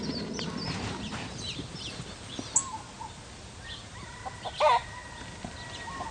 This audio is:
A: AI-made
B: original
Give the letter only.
B